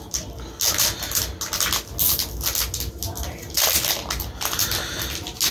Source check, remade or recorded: recorded